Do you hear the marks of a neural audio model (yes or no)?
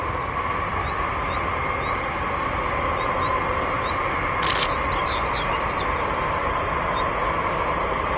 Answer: no